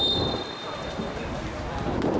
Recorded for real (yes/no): yes